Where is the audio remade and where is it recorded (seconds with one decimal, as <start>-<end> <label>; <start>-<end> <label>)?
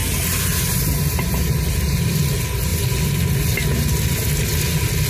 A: 0.0-5.1 recorded